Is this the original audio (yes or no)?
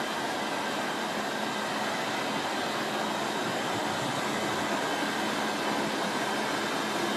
yes